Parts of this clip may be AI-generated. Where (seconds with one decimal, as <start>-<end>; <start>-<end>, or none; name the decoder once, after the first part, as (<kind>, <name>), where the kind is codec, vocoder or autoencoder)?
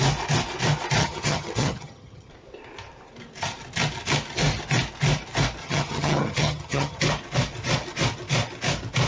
1.0-2.3 (vocoder, HiFi-GAN); 5.6-7.0